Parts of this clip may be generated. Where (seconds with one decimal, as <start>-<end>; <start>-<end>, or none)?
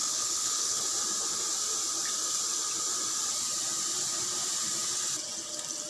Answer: 0.0-0.8